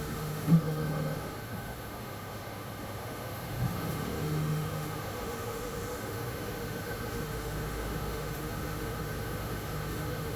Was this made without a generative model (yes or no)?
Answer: no